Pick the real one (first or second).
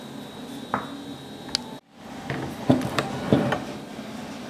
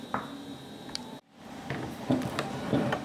first